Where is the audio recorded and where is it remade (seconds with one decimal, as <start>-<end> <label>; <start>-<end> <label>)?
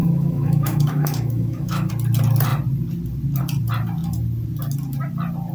0.0-1.9 remade; 1.9-5.5 recorded